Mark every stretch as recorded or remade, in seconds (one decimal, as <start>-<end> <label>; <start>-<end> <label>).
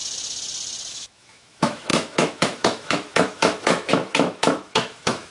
0.0-0.9 recorded; 0.9-5.3 remade